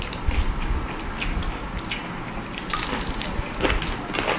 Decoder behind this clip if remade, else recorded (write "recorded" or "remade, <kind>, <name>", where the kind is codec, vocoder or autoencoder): recorded